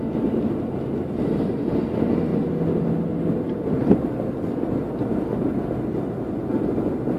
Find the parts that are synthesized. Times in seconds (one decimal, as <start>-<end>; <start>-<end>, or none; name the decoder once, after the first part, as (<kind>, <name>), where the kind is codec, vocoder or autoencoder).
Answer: none